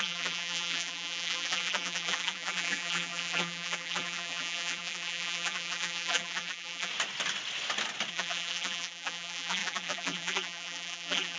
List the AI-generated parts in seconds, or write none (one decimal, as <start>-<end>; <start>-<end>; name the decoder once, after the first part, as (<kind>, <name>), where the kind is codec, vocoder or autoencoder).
0.0-6.9 (vocoder, BigVGAN v2); 8.1-11.4